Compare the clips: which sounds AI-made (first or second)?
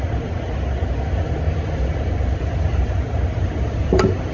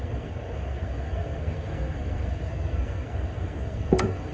second